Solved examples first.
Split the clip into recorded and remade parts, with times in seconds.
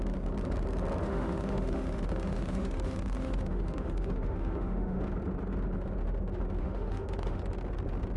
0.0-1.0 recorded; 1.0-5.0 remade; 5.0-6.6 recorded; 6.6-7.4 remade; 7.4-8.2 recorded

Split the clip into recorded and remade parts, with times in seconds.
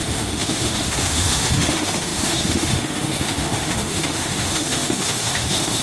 0.0-5.8 remade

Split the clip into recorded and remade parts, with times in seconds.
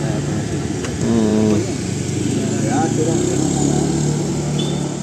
0.0-5.0 recorded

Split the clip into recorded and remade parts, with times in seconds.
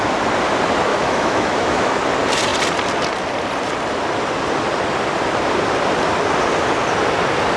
0.0-0.9 recorded; 0.9-2.0 remade; 2.0-7.6 recorded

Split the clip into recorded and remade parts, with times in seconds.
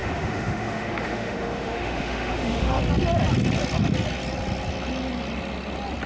0.0-2.8 remade; 2.8-6.1 recorded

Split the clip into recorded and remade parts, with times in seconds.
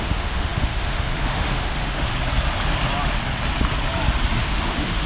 0.0-2.1 remade; 2.1-4.4 recorded; 4.4-5.1 remade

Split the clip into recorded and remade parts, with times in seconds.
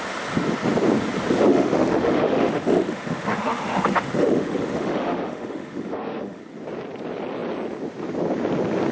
0.0-1.5 recorded; 1.5-6.4 remade; 6.4-8.9 recorded